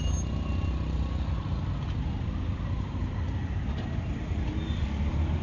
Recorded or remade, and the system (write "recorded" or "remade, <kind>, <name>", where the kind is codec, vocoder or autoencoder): recorded